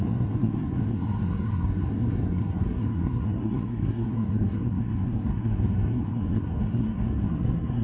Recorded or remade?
remade